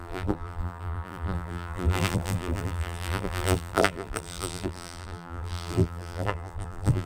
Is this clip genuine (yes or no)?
no